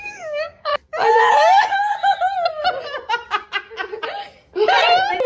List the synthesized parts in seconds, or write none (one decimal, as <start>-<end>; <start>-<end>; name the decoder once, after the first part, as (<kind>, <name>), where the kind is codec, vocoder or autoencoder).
0.0-0.7 (codec, DAC); 1.3-1.9